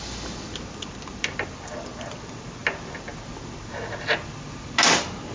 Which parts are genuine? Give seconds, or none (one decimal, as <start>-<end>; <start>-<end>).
0.0-5.3